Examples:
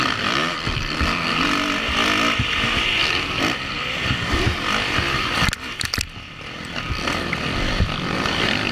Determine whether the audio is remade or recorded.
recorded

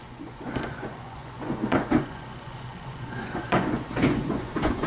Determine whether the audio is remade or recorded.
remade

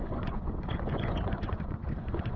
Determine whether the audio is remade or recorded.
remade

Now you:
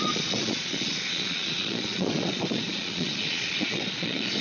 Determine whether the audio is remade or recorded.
remade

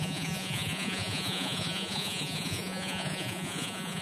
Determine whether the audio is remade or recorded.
remade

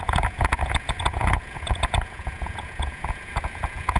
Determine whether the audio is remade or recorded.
remade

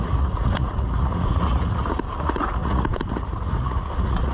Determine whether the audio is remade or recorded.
remade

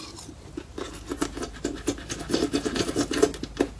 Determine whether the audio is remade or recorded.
recorded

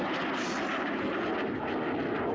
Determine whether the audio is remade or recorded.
recorded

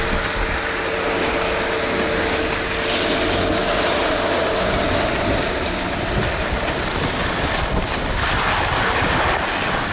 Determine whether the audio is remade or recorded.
recorded